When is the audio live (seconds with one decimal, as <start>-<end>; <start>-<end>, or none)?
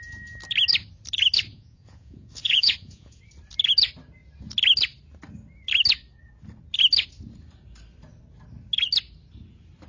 0.0-1.5; 3.2-9.9